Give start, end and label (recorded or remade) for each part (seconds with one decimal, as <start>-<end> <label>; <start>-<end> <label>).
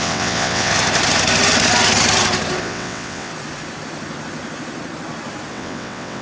0.0-0.7 remade; 0.7-2.6 recorded; 2.6-3.3 remade; 3.3-5.5 recorded; 5.5-6.2 remade